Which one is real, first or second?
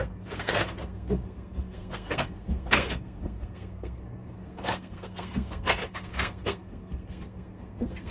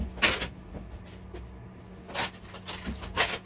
second